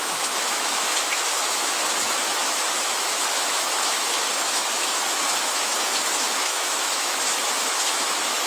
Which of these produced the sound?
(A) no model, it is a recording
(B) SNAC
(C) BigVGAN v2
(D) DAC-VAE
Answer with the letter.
D